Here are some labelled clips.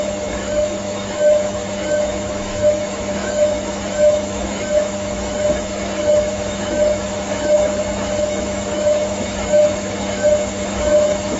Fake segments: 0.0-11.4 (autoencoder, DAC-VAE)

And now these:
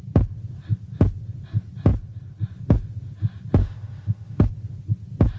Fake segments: 3.6-4.5 (autoencoder, DAC-VAE)